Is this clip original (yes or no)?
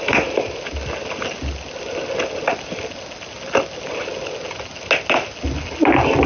yes